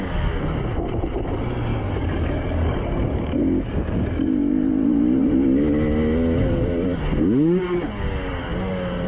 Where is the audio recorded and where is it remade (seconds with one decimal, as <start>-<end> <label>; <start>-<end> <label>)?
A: 0.0-1.7 recorded; 1.7-3.4 remade; 3.4-9.1 recorded